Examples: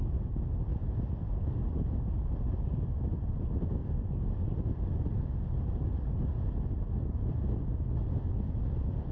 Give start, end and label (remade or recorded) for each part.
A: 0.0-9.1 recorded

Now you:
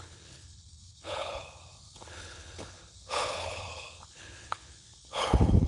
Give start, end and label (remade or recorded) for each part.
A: 0.0-5.7 remade